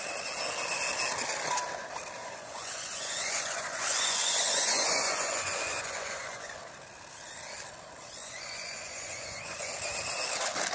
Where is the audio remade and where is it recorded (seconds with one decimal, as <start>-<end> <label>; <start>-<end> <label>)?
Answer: 0.0-2.2 recorded; 2.2-6.6 remade; 6.6-8.2 recorded; 8.2-9.7 remade; 9.7-10.7 recorded